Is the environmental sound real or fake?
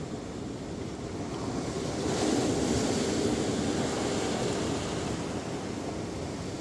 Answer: real